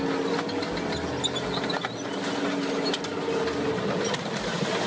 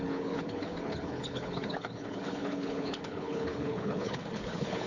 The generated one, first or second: second